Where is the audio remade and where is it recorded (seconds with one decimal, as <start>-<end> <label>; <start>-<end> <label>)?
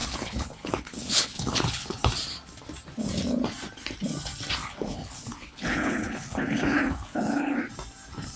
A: 0.0-2.1 remade; 2.1-4.6 recorded; 4.6-7.6 remade; 7.6-8.4 recorded